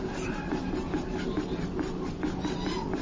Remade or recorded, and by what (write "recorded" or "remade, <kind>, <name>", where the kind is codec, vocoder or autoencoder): recorded